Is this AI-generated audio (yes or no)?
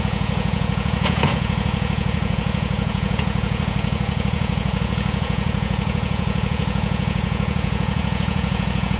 yes